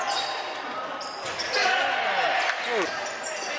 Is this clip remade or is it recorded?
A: recorded